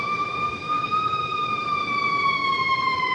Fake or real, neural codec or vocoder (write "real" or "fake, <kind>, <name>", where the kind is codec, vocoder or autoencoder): fake, autoencoder, DAC-VAE